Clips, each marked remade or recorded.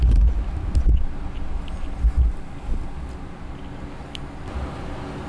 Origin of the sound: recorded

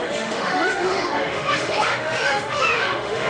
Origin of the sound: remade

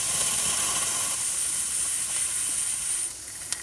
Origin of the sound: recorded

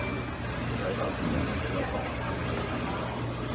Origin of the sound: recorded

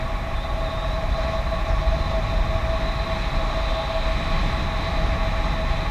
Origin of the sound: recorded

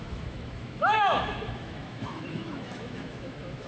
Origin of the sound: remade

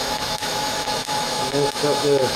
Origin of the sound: remade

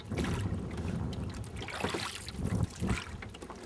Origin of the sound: recorded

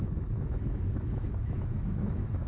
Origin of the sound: remade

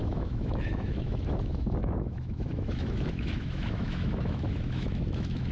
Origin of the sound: remade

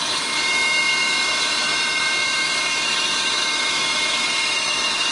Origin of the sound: remade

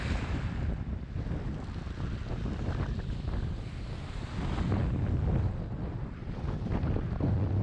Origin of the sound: recorded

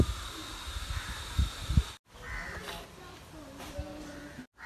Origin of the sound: recorded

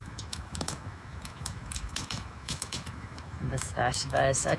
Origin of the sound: remade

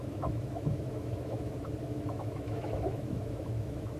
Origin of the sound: remade